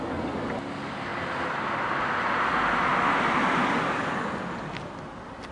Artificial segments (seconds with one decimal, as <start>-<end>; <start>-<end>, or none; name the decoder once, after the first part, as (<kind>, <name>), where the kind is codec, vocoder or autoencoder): none